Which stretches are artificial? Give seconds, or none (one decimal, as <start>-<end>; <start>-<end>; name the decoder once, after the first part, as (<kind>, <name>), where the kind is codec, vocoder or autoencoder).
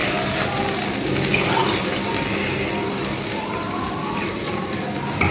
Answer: 1.6-4.8 (vocoder, BigVGAN v2)